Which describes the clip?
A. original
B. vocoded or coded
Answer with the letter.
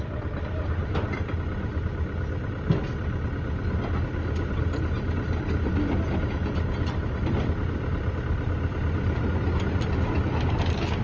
A